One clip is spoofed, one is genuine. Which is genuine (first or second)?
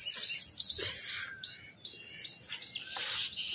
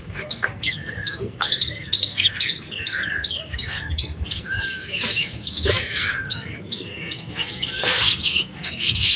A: first